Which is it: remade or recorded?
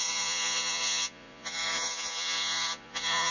remade